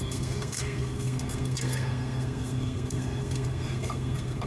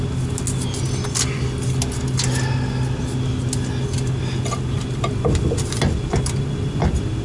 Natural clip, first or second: second